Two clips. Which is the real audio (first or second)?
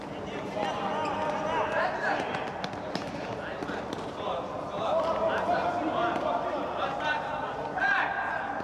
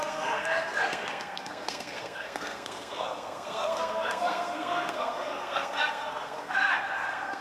first